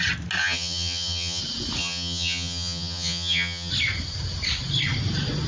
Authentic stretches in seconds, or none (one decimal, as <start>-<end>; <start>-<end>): 0.0-0.4; 1.4-1.8; 3.7-5.5

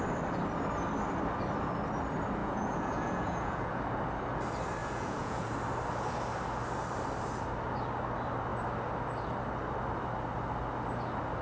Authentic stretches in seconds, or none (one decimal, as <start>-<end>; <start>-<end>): 0.0-2.4; 3.8-4.8; 5.5-11.4

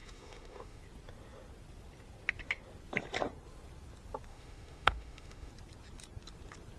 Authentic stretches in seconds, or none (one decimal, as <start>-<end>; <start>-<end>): 0.8-4.3; 5.5-6.8

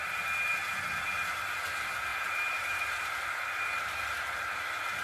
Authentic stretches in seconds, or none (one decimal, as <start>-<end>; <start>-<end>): 0.0-0.6; 1.4-2.1; 2.8-5.0

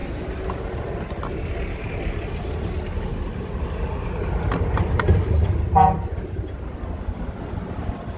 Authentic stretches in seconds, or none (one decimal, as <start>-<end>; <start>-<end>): 0.0-8.2